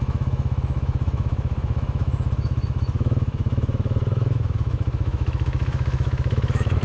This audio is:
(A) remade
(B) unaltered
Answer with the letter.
A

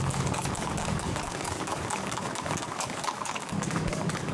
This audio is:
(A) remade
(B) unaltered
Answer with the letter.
A